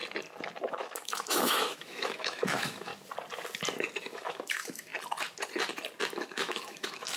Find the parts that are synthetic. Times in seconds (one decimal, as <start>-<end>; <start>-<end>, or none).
0.7-2.9; 4.0-4.9; 6.2-7.2